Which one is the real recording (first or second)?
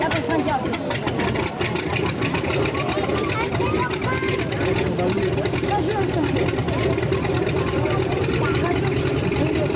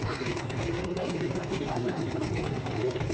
first